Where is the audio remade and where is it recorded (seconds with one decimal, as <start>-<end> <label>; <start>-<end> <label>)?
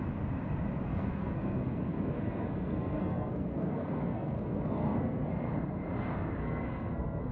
0.0-0.9 recorded; 0.9-5.3 remade; 5.3-6.4 recorded; 6.4-7.3 remade